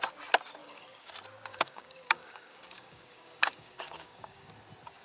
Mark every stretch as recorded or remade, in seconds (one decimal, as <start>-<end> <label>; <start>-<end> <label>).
0.0-0.6 recorded; 0.6-1.1 remade; 1.1-1.5 recorded; 1.5-4.5 remade; 4.5-5.0 recorded

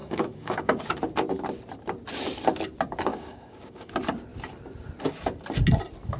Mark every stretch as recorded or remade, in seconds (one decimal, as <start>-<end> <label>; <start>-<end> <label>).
0.0-0.8 remade; 0.8-3.1 recorded; 3.1-3.9 remade; 3.9-6.2 recorded

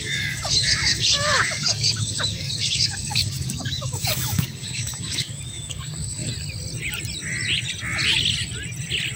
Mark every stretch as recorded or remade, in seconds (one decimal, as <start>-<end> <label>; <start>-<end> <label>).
0.0-6.3 remade; 6.3-9.2 recorded

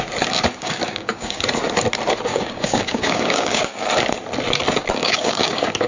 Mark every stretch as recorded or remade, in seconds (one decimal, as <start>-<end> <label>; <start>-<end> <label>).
0.0-0.5 recorded; 0.5-1.4 remade; 1.4-2.3 recorded; 2.3-3.8 remade; 3.8-5.0 recorded; 5.0-5.9 remade

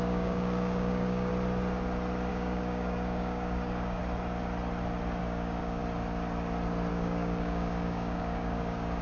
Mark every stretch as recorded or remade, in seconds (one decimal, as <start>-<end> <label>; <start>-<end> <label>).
0.0-1.3 remade; 1.3-2.3 recorded; 2.3-4.0 remade; 4.0-5.2 recorded; 5.2-5.8 remade; 5.8-6.9 recorded; 6.9-9.0 remade

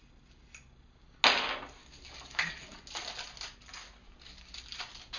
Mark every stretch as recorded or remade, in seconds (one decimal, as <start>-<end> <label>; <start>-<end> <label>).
0.0-1.8 recorded; 1.8-2.8 remade; 2.8-4.0 recorded; 4.0-4.6 remade; 4.6-5.2 recorded

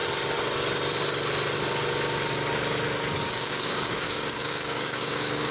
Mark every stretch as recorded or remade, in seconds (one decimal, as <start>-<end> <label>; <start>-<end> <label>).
0.0-3.3 recorded; 3.3-5.5 remade